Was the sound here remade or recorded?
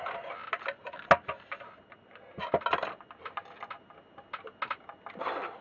recorded